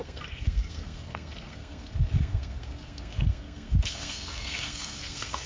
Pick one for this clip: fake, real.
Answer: fake